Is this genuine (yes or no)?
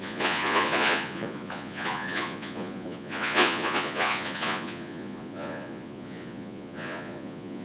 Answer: no